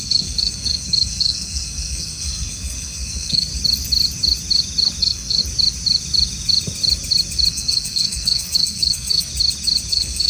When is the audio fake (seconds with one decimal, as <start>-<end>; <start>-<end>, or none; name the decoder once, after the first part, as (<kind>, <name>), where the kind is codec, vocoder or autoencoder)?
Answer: 0.0-3.5 (codec, SNAC); 5.0-5.4; 7.5-9.3; 9.9-10.3